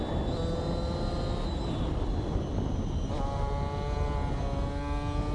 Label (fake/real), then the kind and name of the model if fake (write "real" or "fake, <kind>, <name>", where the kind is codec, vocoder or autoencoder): real